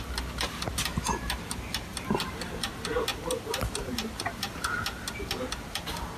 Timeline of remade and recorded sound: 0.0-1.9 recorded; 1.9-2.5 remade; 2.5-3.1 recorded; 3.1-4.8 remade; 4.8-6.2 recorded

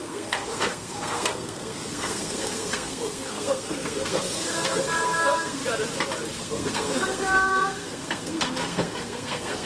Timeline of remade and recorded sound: 0.0-5.6 remade; 5.6-6.4 recorded; 6.4-9.7 remade

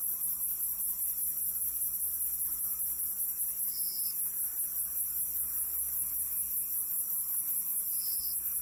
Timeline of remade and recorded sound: 0.0-2.0 recorded; 2.0-4.5 remade; 4.5-4.9 recorded; 4.9-8.2 remade; 8.2-8.6 recorded